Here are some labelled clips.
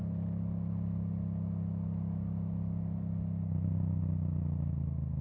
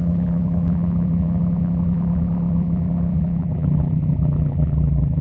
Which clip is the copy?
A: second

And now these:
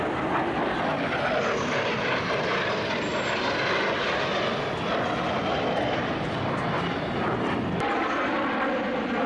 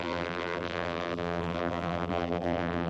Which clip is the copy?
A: second